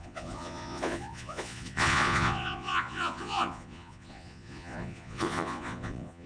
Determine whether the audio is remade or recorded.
remade